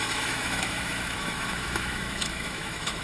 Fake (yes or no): yes